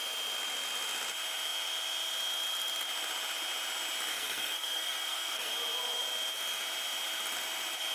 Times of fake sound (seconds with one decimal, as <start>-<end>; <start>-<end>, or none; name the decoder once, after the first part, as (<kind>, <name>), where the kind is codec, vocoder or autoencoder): 4.1-5.5 (codec, SNAC)